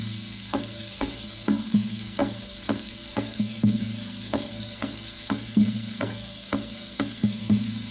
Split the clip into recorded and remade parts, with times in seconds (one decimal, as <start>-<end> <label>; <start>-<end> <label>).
0.0-7.9 remade